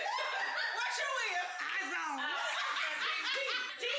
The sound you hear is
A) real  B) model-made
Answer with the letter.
A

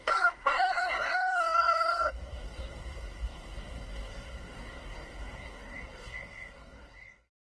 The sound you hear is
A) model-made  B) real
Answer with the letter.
A